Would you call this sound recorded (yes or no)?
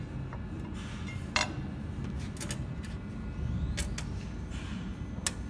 yes